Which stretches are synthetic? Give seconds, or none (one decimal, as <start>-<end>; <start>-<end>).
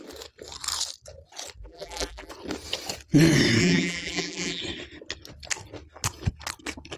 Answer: 1.6-2.3; 3.6-4.6